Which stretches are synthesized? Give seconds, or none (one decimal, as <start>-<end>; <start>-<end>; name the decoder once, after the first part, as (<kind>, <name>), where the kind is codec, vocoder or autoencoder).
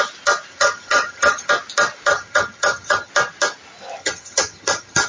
0.5-1.5 (vocoder, HiFi-GAN); 2.1-3.1; 4.0-5.1